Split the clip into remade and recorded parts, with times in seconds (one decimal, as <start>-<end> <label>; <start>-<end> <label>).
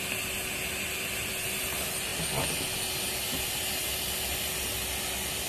0.0-5.5 recorded